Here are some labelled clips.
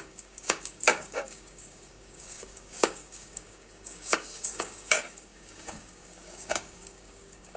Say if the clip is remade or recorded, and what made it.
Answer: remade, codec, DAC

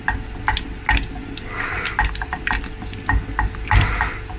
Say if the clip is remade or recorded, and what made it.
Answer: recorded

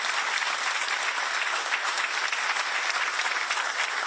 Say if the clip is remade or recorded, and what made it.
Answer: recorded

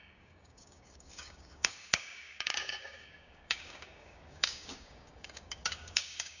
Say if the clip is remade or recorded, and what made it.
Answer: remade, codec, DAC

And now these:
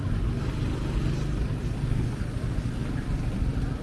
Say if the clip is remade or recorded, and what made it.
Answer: recorded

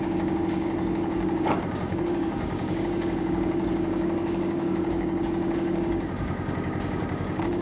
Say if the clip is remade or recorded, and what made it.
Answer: remade, codec, DAC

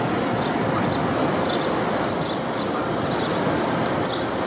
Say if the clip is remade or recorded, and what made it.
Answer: recorded